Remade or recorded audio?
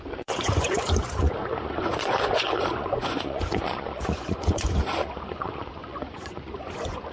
remade